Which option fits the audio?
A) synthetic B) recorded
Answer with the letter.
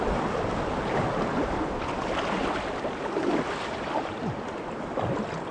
B